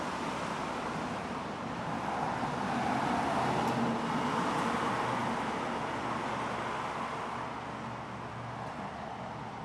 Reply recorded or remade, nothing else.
recorded